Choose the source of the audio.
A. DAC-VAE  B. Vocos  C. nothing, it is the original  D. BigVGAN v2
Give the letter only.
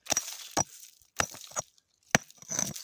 C